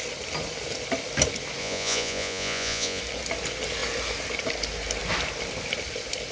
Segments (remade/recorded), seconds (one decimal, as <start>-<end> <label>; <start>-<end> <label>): 0.0-1.6 recorded; 1.6-3.0 remade; 3.0-6.3 recorded